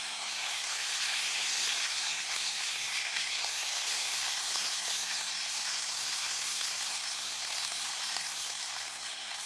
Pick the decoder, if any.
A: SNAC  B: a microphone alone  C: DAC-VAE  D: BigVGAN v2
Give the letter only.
A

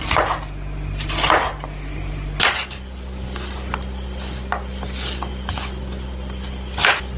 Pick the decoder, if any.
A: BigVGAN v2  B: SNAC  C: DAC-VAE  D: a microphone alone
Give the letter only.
D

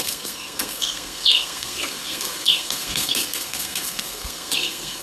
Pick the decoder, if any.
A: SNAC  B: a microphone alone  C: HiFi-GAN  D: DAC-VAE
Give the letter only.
A